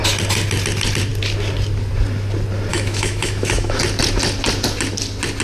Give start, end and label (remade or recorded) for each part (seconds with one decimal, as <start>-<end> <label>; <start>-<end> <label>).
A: 0.0-2.7 recorded; 2.7-3.8 remade; 3.8-5.4 recorded